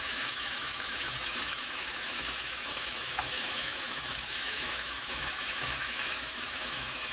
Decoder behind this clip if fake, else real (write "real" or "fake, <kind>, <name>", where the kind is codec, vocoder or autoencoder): fake, autoencoder, DAC-VAE